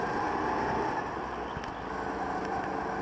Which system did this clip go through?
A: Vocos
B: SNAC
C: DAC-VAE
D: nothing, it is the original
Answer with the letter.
D